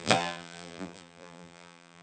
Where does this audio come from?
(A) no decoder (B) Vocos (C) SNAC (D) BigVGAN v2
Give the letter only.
D